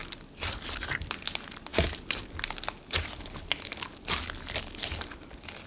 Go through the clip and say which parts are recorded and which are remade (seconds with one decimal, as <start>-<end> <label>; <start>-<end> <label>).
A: 0.0-5.7 recorded